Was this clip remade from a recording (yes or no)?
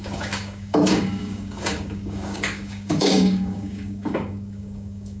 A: yes